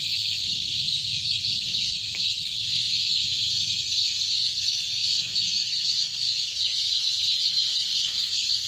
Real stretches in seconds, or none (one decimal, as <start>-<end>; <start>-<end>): none